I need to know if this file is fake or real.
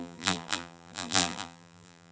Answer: fake